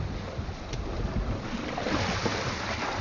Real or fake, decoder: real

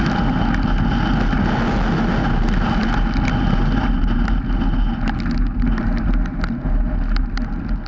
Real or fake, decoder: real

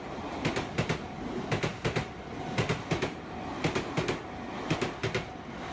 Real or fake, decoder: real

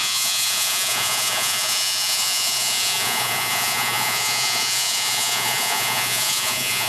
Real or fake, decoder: fake, vocoder, Vocos